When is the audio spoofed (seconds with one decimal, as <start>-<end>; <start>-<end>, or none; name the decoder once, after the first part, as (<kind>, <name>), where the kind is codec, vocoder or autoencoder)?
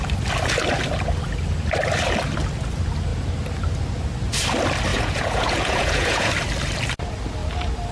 4.9-6.3 (vocoder, Vocos)